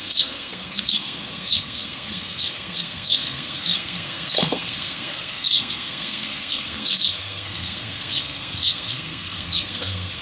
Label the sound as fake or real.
fake